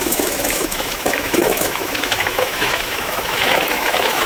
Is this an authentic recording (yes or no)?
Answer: no